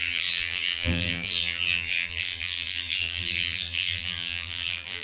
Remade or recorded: remade